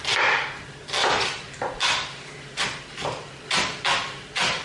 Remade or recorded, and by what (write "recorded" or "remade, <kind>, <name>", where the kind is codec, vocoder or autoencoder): recorded